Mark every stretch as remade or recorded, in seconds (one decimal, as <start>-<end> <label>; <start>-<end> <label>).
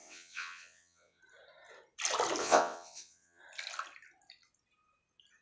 0.0-1.2 remade; 1.2-2.4 recorded; 2.4-3.4 remade; 3.4-5.4 recorded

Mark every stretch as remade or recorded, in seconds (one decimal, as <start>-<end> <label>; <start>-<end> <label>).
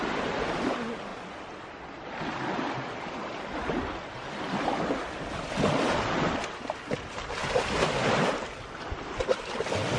0.0-10.0 recorded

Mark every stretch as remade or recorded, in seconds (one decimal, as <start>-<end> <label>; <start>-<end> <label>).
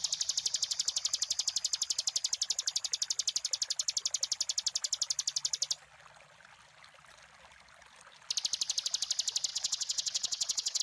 0.0-9.5 recorded; 9.5-10.8 remade